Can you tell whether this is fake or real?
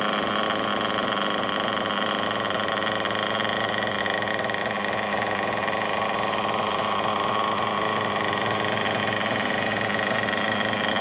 real